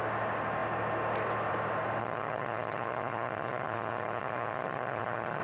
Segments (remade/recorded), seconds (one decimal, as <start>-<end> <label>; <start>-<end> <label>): 0.0-2.0 recorded; 2.0-5.4 remade